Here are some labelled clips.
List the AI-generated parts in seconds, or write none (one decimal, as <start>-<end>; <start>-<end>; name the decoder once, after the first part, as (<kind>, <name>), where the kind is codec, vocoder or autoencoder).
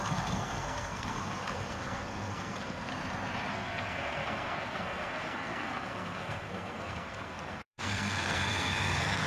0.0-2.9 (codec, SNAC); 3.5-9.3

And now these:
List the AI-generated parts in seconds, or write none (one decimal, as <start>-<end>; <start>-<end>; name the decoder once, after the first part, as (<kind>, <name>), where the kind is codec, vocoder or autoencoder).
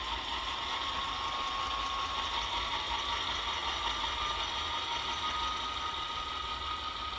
none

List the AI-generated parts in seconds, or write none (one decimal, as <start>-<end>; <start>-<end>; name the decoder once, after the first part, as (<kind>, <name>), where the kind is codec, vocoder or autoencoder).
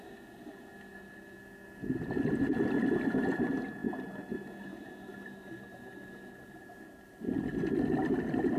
none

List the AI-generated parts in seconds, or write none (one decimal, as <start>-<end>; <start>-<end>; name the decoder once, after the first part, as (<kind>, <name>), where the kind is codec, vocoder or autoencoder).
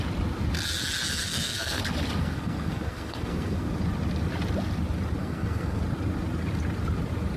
1.2-1.8 (codec, SNAC); 2.2-3.7; 5.2-5.8